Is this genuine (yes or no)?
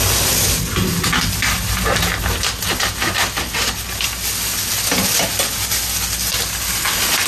yes